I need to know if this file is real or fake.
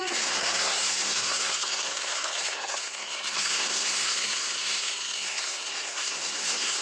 fake